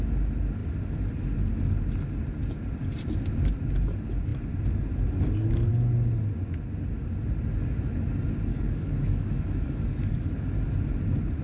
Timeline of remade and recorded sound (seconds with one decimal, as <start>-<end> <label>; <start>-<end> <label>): 0.0-8.5 recorded; 8.5-10.3 remade; 10.3-11.4 recorded